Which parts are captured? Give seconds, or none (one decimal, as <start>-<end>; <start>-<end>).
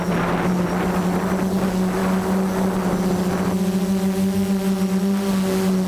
0.0-5.9